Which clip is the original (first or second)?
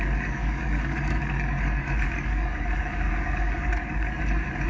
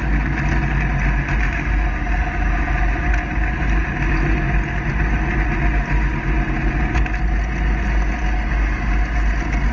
second